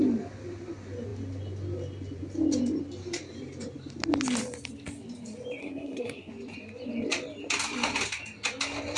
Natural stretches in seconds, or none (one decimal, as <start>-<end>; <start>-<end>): 0.0-5.6; 6.3-9.0